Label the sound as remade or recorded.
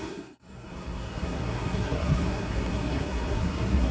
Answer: remade